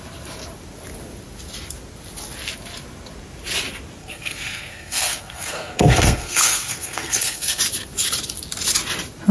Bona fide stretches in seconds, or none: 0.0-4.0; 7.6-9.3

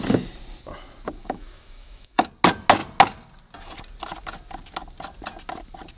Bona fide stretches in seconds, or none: 0.0-1.2; 2.3-6.0

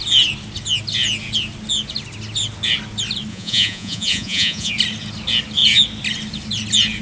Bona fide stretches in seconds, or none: 0.0-3.3; 4.7-7.0

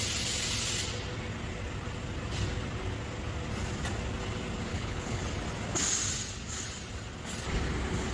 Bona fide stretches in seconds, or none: 0.0-4.7; 5.2-8.1

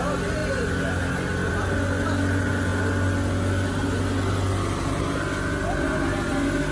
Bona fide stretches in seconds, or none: 0.0-6.7